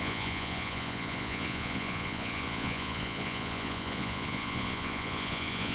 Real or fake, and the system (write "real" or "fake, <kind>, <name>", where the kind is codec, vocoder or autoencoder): fake, vocoder, Vocos